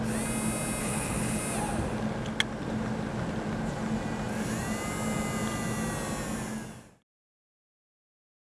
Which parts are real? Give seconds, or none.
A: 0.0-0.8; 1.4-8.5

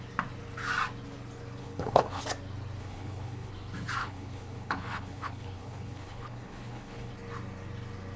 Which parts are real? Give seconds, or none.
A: 0.0-1.6; 2.2-2.8; 3.5-4.0; 7.1-8.2

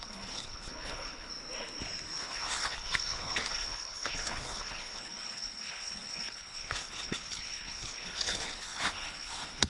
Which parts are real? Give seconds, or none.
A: 1.3-2.2

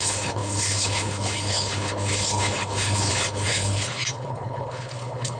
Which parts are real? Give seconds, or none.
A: none

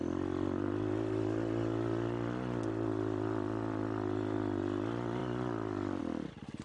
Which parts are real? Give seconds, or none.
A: 0.0-6.6

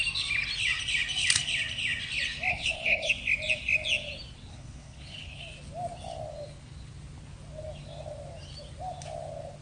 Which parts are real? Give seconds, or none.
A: 0.0-2.5; 3.1-4.5; 5.4-9.6